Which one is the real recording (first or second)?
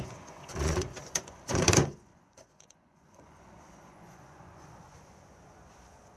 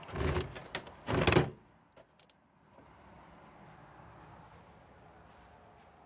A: second